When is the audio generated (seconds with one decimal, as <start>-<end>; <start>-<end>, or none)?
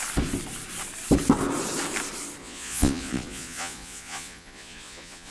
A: 2.4-5.3